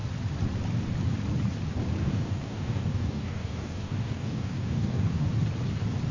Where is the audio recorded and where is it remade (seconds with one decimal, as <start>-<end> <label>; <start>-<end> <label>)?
0.0-2.0 recorded; 2.0-5.3 remade; 5.3-6.1 recorded